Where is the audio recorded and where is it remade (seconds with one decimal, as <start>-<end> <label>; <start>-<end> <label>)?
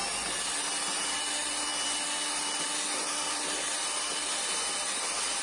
0.0-5.4 recorded